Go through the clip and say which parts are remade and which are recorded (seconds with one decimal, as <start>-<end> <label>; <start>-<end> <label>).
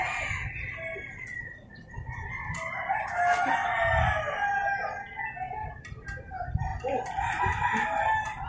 0.0-8.5 recorded